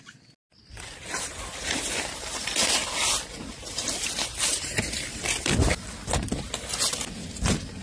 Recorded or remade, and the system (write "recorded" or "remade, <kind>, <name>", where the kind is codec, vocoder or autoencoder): recorded